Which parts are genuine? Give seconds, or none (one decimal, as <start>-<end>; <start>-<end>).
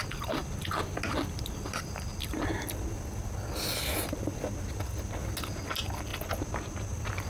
0.0-7.3